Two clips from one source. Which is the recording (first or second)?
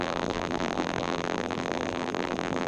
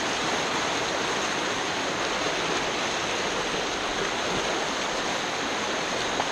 second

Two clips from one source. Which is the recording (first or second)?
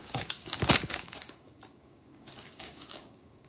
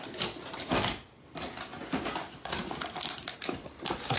second